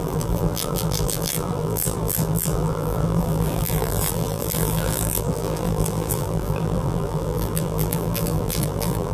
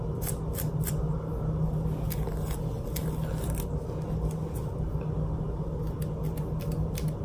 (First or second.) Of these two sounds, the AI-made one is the first